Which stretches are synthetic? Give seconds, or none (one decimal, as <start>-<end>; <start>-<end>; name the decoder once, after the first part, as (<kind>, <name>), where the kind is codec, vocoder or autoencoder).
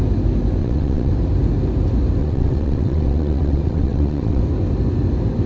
0.6-1.1 (vocoder, WaveNeXt); 2.2-4.4